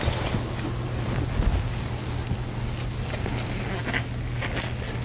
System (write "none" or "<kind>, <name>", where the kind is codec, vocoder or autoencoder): none